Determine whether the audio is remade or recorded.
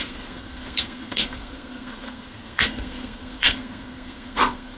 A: remade